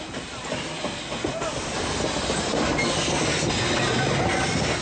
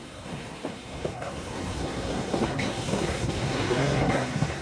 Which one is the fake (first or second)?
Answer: second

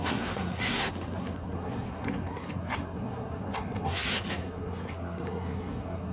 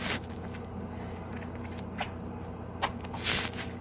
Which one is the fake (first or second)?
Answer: first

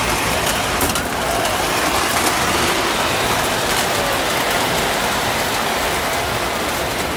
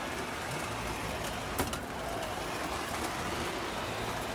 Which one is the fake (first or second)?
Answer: first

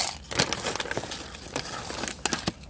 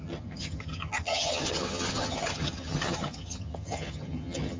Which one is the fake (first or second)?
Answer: second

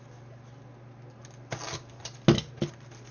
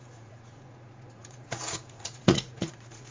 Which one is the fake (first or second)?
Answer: second